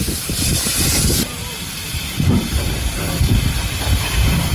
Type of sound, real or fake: real